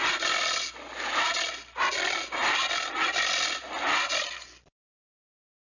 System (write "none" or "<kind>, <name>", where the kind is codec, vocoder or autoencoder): none